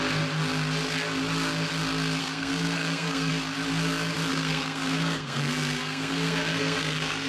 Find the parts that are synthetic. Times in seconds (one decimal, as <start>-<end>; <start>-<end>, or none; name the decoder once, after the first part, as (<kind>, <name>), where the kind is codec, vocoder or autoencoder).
2.2-3.3 (codec, SNAC); 4.3-7.3